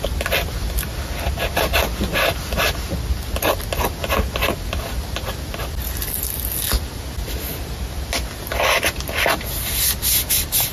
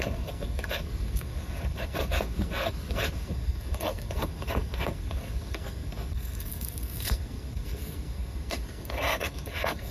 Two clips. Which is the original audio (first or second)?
first